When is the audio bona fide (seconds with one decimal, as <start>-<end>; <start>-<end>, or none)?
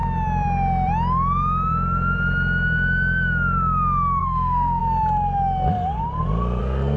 0.0-4.2; 4.8-6.6